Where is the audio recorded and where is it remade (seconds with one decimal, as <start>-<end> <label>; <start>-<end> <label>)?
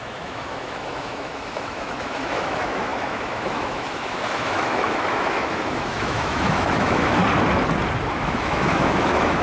0.0-7.2 remade; 7.2-8.1 recorded; 8.1-9.4 remade